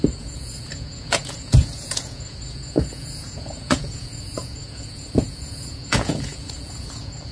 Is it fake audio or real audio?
fake